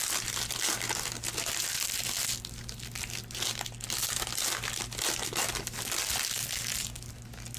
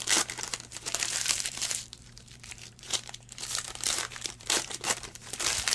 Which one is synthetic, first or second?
second